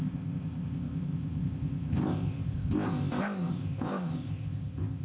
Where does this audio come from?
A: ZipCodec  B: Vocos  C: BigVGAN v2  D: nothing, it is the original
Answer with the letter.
A